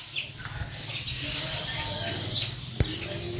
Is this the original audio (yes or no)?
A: yes